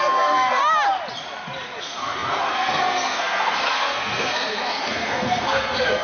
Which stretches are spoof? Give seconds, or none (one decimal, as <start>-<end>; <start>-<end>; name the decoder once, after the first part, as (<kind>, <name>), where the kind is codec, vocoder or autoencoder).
0.0-0.6 (codec, SNAC); 1.8-6.0